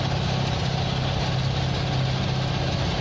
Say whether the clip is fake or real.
real